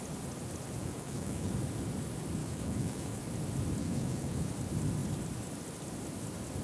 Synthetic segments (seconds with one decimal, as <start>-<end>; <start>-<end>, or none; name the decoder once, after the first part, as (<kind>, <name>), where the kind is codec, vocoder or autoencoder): 0.8-1.5 (autoencoder, DAC-VAE); 2.4-3.2; 3.8-4.5